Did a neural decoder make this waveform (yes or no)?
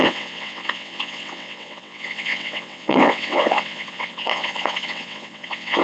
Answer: yes